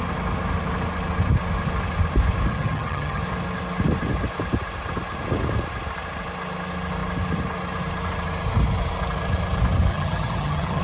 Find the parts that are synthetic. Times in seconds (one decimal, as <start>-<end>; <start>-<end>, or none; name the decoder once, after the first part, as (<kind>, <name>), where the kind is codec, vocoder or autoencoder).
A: 2.5-3.2 (vocoder, HiFi-GAN); 9.9-10.8